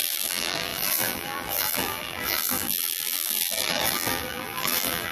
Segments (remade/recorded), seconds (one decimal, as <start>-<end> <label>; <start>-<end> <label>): 0.0-5.1 remade